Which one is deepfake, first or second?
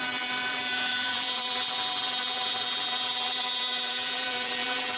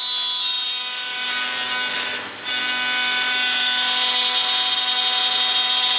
first